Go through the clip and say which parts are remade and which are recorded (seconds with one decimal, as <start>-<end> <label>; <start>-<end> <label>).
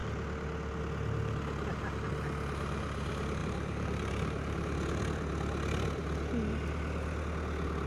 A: 0.0-3.4 recorded; 3.4-5.0 remade; 5.0-7.9 recorded